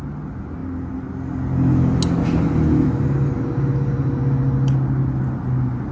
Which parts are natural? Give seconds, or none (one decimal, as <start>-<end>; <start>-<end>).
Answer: 0.0-5.9